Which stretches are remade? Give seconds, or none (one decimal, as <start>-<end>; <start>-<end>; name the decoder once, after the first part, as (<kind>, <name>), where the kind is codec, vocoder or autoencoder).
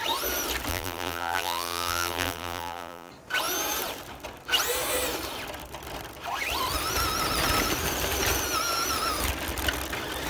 0.7-3.1 (vocoder, BigVGAN v2)